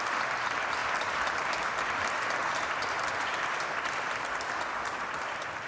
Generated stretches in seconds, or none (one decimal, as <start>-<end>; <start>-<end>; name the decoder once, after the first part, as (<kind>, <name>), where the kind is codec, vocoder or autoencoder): none

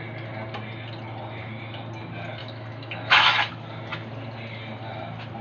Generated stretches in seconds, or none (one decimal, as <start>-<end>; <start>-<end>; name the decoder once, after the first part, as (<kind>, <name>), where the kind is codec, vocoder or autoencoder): 2.4-3.5 (autoencoder, DAC-VAE)